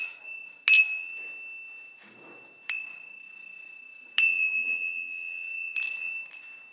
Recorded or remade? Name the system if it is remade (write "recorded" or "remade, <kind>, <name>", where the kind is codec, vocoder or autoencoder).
recorded